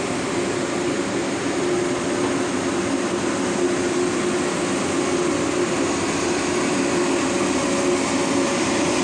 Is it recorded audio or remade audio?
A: recorded